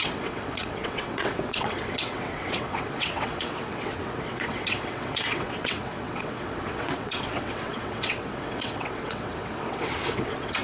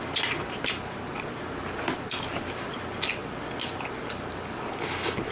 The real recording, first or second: second